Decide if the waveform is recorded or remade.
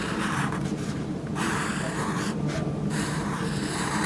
remade